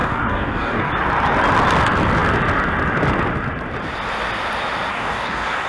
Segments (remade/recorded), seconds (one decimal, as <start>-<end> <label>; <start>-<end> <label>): 0.0-0.9 remade; 0.9-4.9 recorded; 4.9-5.7 remade